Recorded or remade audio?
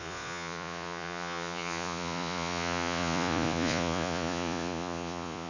remade